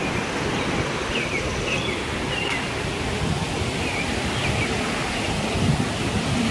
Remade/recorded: recorded